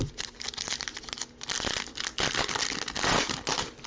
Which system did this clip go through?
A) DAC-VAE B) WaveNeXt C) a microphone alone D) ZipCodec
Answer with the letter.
C